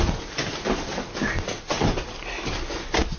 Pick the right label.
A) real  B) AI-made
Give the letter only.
A